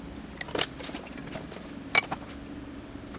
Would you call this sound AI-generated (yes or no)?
yes